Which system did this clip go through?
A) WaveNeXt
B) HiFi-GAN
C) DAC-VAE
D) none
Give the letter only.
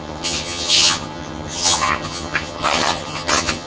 B